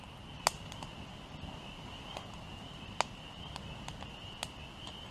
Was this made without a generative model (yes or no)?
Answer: yes